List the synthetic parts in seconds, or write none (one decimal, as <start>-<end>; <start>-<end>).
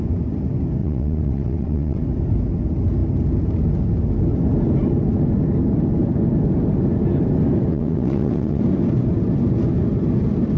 0.8-2.0; 7.7-8.6